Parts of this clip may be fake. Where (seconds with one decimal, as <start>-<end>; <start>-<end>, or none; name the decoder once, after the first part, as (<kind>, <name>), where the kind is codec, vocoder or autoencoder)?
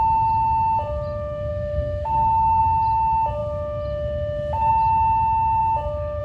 1.5-2.6 (codec, SNAC)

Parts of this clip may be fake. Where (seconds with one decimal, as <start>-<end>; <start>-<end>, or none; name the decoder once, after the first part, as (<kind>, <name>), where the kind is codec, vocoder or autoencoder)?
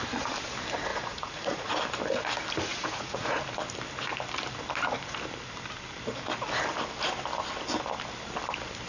0.9-1.8 (vocoder, Vocos); 2.7-3.4